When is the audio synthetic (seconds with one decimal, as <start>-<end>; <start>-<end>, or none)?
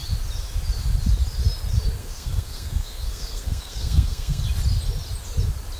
2.0-4.4